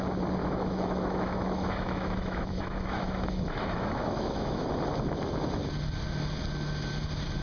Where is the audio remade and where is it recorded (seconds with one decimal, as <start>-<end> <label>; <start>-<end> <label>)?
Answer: 0.0-0.4 recorded; 0.4-4.7 remade; 4.7-7.4 recorded

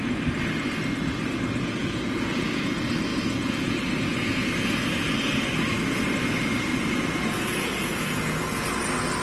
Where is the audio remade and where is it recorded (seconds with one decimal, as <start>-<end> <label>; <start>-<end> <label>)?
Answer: 0.0-1.8 recorded; 1.8-2.6 remade; 2.6-3.1 recorded; 3.1-4.5 remade; 4.5-6.7 recorded; 6.7-8.7 remade; 8.7-9.2 recorded

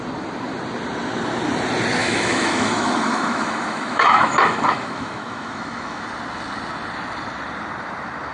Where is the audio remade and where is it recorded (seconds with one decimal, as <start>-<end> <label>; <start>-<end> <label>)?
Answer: 0.0-2.0 recorded; 2.0-6.0 remade; 6.0-8.3 recorded